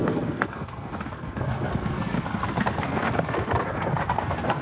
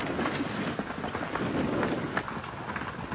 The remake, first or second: first